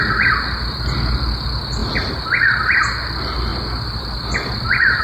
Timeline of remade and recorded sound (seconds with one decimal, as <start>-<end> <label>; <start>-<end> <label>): 0.0-5.0 recorded